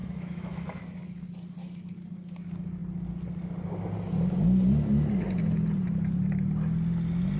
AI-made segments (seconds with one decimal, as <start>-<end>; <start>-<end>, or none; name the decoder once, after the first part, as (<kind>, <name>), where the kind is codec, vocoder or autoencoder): 0.0-0.6 (autoencoder, DAC-VAE)